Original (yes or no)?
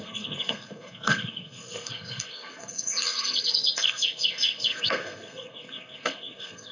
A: no